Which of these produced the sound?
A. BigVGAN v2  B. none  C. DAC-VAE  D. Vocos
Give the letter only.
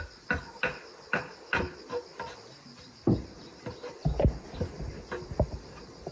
B